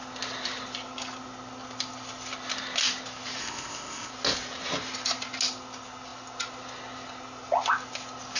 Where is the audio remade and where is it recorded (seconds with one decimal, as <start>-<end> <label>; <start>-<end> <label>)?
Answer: 0.0-3.4 recorded; 3.4-4.1 remade; 4.1-8.4 recorded